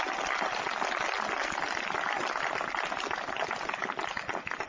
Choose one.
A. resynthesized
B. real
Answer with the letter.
B